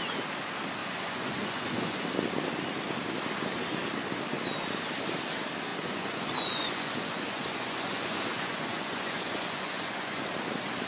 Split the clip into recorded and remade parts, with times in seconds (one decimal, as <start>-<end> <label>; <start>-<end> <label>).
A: 0.0-0.8 recorded; 0.8-2.0 remade; 2.0-5.7 recorded; 5.7-10.2 remade; 10.2-10.9 recorded